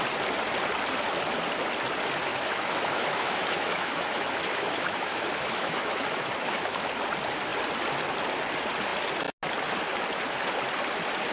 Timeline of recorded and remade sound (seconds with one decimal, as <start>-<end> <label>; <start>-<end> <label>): 0.0-2.3 recorded; 2.3-6.9 remade; 6.9-11.3 recorded